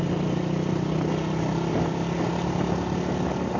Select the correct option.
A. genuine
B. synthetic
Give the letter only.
A